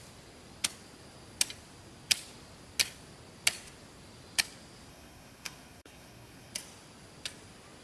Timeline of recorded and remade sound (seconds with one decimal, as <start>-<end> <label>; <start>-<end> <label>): 0.0-4.9 recorded; 4.9-6.5 remade; 6.5-7.8 recorded